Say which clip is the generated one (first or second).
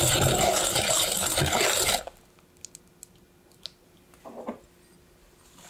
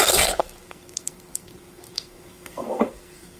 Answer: second